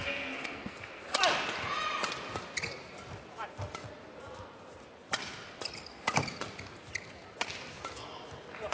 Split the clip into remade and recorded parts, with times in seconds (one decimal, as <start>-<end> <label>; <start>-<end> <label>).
0.0-1.0 remade; 1.0-8.7 recorded